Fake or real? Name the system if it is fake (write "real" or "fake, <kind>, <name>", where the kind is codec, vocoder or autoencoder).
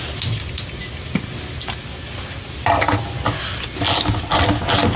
real